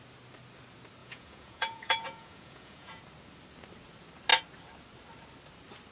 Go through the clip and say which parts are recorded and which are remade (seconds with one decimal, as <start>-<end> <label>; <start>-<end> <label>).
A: 0.0-1.0 recorded; 1.0-3.0 remade; 3.0-5.9 recorded